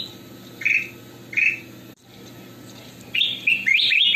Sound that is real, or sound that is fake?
real